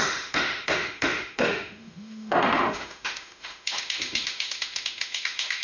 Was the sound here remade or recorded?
remade